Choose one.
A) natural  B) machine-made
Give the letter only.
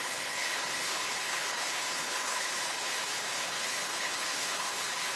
B